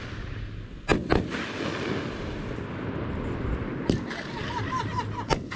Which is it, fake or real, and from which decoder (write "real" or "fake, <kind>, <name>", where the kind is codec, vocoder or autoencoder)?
real